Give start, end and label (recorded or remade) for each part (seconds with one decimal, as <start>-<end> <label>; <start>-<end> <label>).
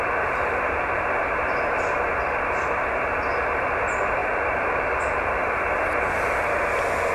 0.0-7.1 recorded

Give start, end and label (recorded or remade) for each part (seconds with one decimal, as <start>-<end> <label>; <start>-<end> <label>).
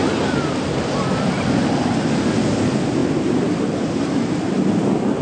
0.0-3.0 recorded; 3.0-4.5 remade; 4.5-5.2 recorded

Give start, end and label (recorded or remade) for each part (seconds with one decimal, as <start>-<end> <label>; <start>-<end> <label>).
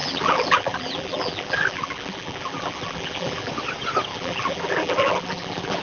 0.0-3.5 remade; 3.5-4.1 recorded; 4.1-5.8 remade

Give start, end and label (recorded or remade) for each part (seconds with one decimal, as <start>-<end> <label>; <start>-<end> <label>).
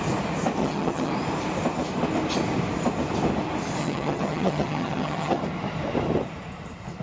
0.0-0.6 recorded; 0.6-1.1 remade; 1.1-3.8 recorded; 3.8-5.4 remade; 5.4-7.0 recorded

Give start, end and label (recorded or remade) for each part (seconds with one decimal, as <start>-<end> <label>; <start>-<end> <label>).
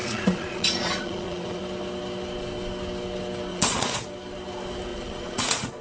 0.0-1.6 remade; 1.6-3.5 recorded; 3.5-4.1 remade; 4.1-4.9 recorded; 4.9-5.8 remade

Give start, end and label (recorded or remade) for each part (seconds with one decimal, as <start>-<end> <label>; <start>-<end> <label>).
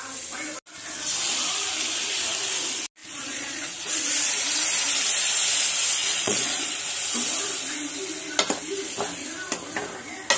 0.0-3.0 recorded; 3.0-3.9 remade; 3.9-6.0 recorded; 6.0-6.8 remade; 6.8-10.4 recorded